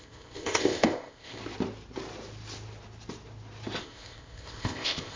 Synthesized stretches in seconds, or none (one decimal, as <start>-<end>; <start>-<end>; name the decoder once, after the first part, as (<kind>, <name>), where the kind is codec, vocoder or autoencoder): 0.0-1.4 (codec, ZipCodec); 3.8-5.2